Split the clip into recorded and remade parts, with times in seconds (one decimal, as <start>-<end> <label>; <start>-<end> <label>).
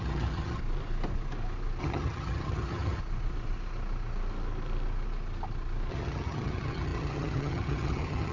0.0-0.6 remade; 0.6-1.8 recorded; 1.8-3.0 remade; 3.0-5.9 recorded; 5.9-8.3 remade